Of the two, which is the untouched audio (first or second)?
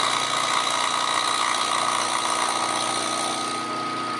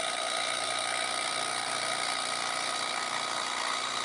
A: first